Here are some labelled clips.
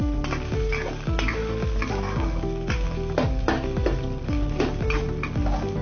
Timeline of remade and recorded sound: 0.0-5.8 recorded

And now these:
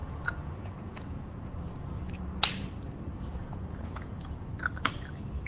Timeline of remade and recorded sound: 0.0-1.6 remade; 1.6-3.3 recorded; 3.3-4.5 remade; 4.5-5.5 recorded

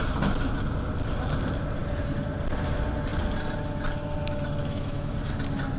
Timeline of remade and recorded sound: 0.0-4.6 recorded; 4.6-5.3 remade; 5.3-5.8 recorded

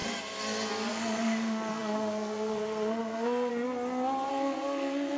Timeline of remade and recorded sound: 0.0-0.9 recorded; 0.9-3.5 remade; 3.5-4.3 recorded; 4.3-5.2 remade

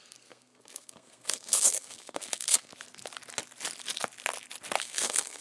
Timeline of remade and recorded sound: 0.0-2.7 remade; 2.7-4.8 recorded; 4.8-5.4 remade

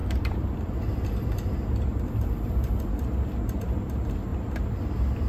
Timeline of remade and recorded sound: 0.0-2.8 remade; 2.8-5.3 recorded